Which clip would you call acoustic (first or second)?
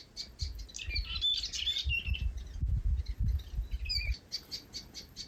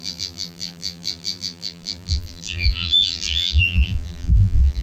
first